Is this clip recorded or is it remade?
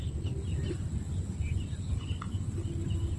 recorded